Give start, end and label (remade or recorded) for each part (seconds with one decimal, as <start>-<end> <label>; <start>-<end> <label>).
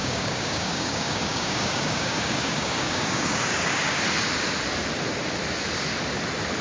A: 0.0-4.0 remade; 4.0-6.6 recorded